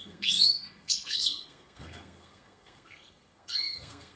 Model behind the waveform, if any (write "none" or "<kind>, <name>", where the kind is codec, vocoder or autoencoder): codec, SNAC